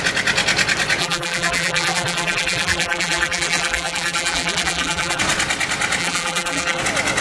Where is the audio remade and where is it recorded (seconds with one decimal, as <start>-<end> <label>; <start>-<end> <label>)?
0.0-1.0 recorded; 1.0-5.2 remade; 5.2-6.0 recorded; 6.0-6.8 remade; 6.8-7.2 recorded